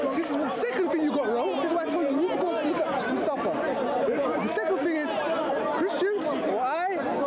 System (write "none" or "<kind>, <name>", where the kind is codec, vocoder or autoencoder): none